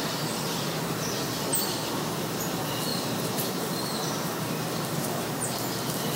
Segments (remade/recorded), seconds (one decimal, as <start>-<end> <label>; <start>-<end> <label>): 0.0-2.9 recorded; 2.9-5.4 remade; 5.4-6.2 recorded